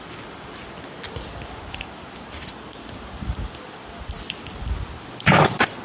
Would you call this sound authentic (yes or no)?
yes